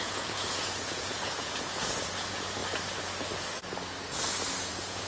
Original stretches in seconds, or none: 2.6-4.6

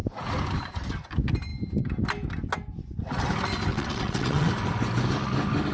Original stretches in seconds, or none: 0.0-3.7; 4.5-5.7